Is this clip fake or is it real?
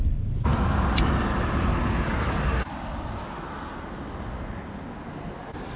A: real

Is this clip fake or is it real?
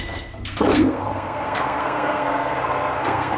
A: fake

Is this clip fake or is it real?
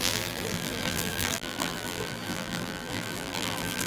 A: fake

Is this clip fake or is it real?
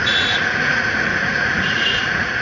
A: fake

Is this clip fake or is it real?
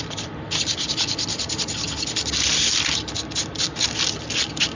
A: real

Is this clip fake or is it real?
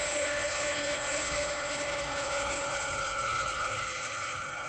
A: fake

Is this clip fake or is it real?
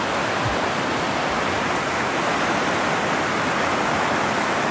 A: real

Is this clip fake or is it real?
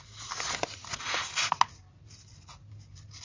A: real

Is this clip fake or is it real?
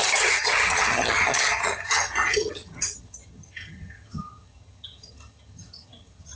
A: fake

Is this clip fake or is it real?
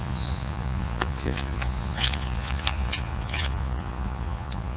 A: fake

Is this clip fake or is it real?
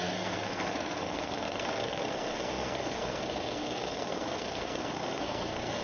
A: fake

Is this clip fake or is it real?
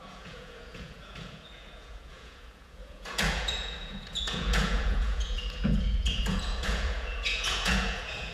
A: fake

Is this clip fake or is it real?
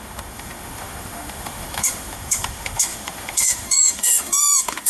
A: fake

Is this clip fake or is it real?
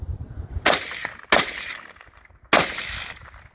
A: real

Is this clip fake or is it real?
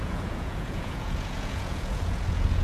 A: fake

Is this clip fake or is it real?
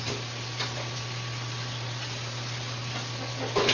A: real